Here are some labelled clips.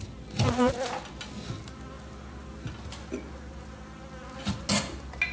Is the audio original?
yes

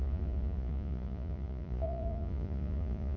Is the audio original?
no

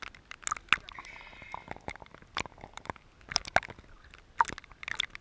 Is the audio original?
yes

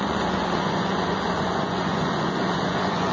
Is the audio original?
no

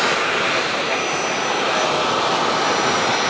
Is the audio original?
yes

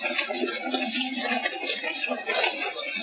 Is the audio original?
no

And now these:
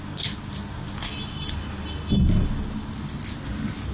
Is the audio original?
yes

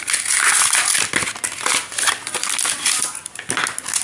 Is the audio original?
yes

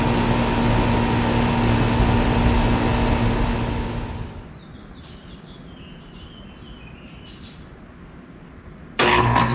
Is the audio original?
yes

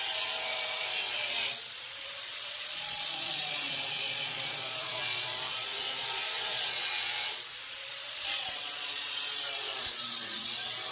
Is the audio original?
no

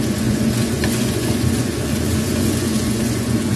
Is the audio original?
no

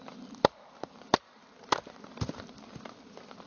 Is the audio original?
yes